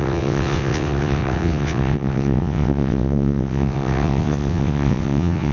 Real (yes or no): no